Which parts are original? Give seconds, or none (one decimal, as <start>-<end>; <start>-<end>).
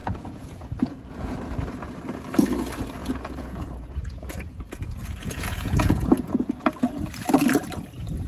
1.4-3.0; 6.5-8.3